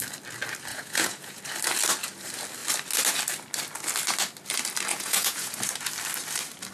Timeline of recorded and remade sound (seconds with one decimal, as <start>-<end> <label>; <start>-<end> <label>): 0.0-0.7 recorded; 0.7-1.4 remade; 1.4-4.9 recorded; 4.9-5.6 remade; 5.6-6.7 recorded